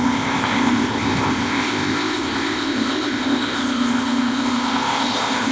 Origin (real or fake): fake